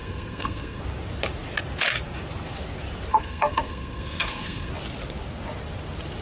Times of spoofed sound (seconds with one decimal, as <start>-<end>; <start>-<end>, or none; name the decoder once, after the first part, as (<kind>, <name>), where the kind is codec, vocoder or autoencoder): 0.0-0.8 (codec, SNAC); 3.1-4.7